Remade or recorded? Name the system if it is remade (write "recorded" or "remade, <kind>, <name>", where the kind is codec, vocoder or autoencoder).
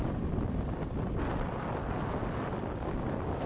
recorded